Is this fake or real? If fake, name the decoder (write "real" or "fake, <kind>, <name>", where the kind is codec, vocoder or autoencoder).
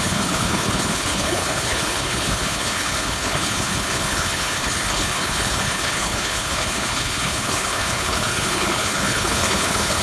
fake, codec, HILCodec